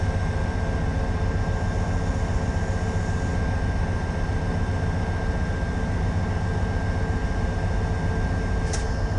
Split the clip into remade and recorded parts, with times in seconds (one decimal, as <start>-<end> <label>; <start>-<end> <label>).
0.0-9.2 recorded